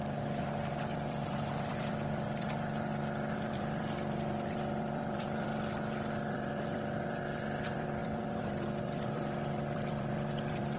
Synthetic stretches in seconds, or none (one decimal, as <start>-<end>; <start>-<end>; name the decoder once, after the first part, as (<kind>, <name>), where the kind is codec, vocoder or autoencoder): 0.7-2.9 (vocoder, BigVGAN v2); 3.5-5.5; 6.3-10.8